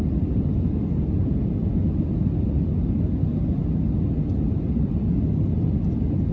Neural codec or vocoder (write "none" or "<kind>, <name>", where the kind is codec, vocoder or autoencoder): none